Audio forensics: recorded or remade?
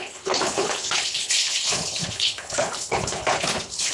remade